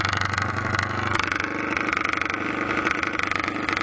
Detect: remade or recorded recorded